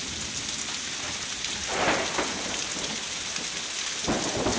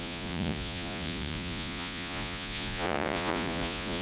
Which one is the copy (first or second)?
second